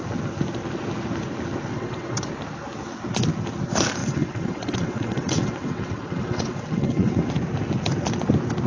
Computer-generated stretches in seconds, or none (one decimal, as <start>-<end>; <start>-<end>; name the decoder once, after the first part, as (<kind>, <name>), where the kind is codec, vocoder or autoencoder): 1.7-2.3 (vocoder, WaveNeXt); 4.0-7.3